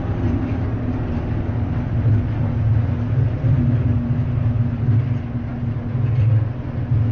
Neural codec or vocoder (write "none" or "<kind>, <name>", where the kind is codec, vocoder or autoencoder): none